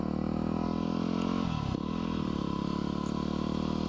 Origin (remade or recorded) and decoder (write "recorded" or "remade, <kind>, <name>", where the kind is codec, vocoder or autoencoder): recorded